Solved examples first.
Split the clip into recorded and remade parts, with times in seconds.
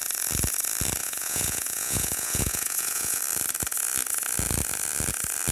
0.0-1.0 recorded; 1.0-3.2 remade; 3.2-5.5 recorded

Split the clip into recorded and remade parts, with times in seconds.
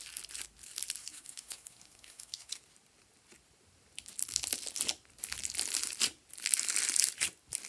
0.0-1.0 recorded; 1.0-2.5 remade; 2.5-7.7 recorded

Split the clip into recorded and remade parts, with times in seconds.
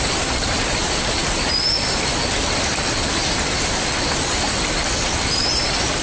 0.0-6.0 recorded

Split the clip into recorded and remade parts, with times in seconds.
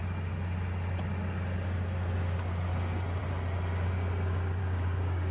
0.0-4.6 recorded; 4.6-5.3 remade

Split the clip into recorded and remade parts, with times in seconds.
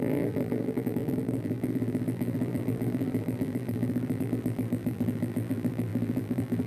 0.0-6.7 remade